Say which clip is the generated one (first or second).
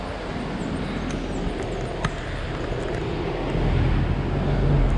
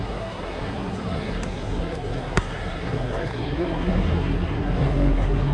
second